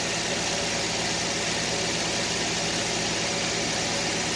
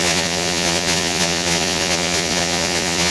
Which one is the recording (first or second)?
first